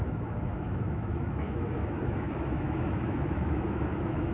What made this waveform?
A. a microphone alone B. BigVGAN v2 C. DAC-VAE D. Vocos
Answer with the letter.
C